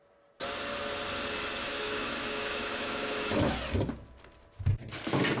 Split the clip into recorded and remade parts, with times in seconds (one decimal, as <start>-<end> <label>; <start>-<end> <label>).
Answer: 0.0-1.6 recorded; 1.6-3.5 remade; 3.5-5.4 recorded